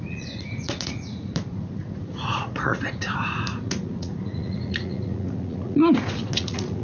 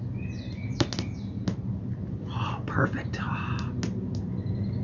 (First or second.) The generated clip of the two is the first